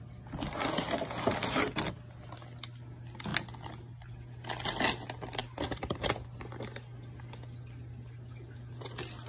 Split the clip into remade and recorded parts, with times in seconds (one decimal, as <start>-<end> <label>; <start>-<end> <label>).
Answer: 0.0-5.4 recorded; 5.4-6.4 remade; 6.4-9.3 recorded